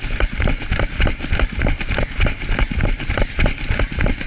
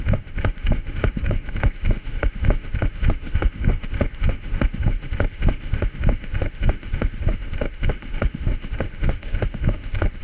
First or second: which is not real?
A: second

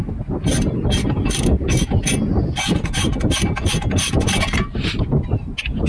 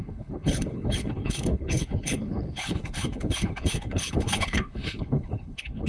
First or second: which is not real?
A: second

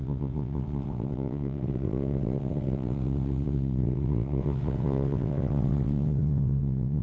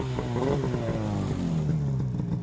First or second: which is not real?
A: first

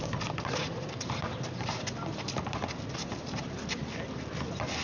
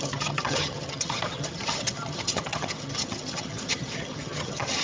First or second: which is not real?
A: second